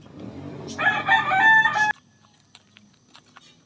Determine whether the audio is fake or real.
real